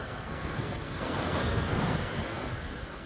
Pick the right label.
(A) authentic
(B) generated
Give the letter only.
B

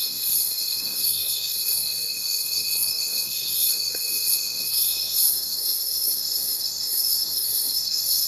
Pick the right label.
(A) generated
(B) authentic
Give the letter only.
A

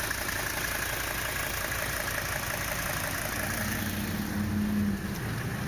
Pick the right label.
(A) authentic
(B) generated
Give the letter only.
A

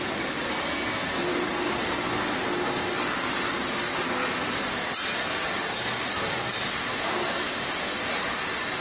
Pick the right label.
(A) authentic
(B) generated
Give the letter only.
A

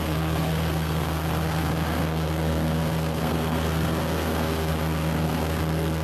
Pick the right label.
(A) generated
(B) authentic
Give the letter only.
A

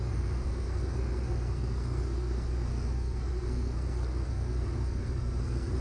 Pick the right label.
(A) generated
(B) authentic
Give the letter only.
A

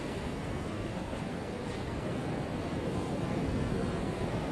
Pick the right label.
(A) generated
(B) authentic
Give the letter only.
A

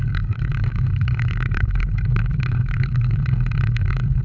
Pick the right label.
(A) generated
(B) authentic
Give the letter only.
A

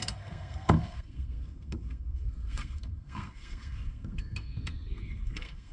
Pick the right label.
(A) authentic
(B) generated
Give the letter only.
B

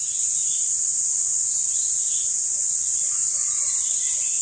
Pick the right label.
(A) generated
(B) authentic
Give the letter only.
B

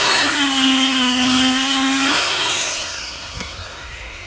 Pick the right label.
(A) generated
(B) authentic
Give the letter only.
A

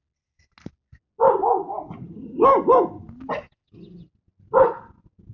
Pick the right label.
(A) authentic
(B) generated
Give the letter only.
A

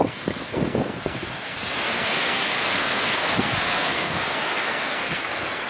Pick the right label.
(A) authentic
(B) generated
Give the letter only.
B